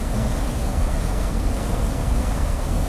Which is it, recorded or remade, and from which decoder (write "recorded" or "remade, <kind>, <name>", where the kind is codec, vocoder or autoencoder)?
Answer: remade, codec, SNAC